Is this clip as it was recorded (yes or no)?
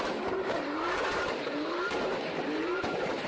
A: no